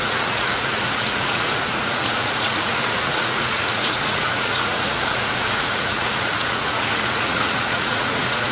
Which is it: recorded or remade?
remade